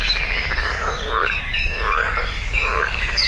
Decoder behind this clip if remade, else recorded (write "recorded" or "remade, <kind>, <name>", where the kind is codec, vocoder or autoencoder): remade, codec, DAC